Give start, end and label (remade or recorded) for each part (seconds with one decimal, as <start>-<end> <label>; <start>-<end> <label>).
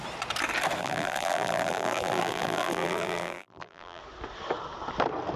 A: 0.0-0.8 recorded; 0.8-4.0 remade; 4.0-5.4 recorded